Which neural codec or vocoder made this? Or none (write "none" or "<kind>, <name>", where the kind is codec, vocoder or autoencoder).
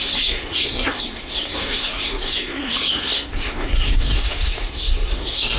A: codec, SNAC